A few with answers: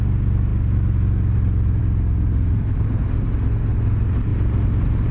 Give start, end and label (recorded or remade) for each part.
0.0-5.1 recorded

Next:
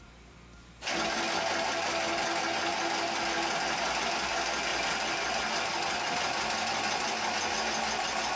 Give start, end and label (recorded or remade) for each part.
0.0-8.4 recorded

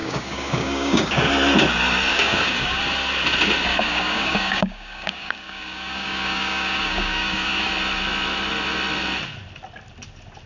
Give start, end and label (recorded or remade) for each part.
0.0-1.3 remade; 1.3-2.1 recorded; 2.1-2.8 remade; 2.8-3.7 recorded; 3.7-7.7 remade; 7.7-10.5 recorded

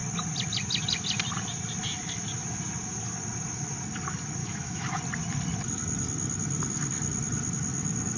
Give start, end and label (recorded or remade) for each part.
0.0-4.4 recorded; 4.4-5.0 remade; 5.0-8.2 recorded

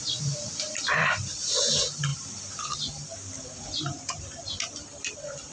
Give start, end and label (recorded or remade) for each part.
0.0-5.5 recorded

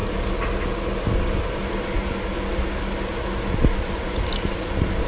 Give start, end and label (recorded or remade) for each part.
0.0-3.1 recorded; 3.1-5.1 remade

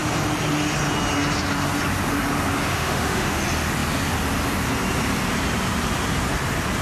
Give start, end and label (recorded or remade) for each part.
0.0-2.7 recorded; 2.7-3.4 remade; 3.4-6.8 recorded

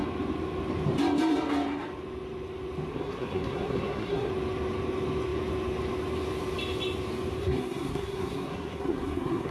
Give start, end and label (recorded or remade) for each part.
0.0-2.9 recorded; 2.9-4.3 remade; 4.3-7.4 recorded; 7.4-9.5 remade